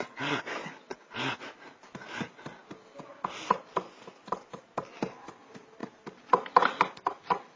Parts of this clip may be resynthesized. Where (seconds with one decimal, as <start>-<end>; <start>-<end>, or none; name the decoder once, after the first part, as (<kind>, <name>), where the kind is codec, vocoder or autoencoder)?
none